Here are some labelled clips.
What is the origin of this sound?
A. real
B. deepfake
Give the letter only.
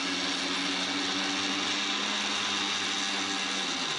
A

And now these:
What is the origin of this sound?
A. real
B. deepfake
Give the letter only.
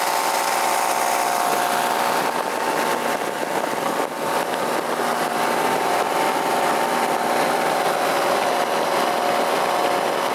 A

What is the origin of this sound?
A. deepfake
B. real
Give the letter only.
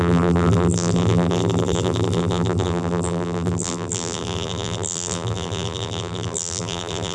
A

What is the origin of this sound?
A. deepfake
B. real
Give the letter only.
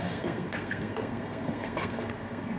A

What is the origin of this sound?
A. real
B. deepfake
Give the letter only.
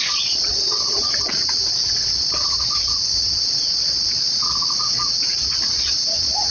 B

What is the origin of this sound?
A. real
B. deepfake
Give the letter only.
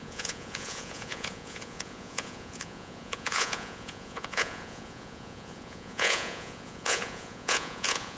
B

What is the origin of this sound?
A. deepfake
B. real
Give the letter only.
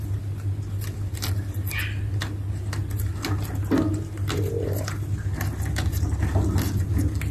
B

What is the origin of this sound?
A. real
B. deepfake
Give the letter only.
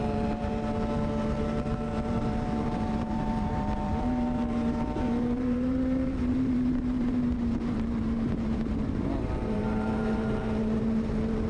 B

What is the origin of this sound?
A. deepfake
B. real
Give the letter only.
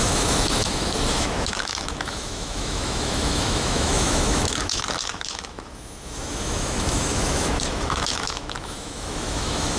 A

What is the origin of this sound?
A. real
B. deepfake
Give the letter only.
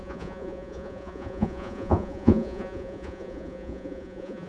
B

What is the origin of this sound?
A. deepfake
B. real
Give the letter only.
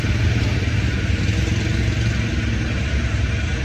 B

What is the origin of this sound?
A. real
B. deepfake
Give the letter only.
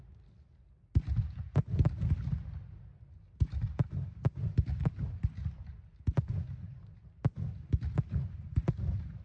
A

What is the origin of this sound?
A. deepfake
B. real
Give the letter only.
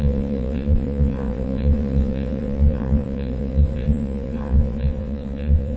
A